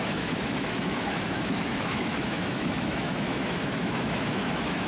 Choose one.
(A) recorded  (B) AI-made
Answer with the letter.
B